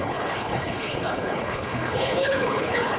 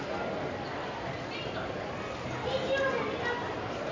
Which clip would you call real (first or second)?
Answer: second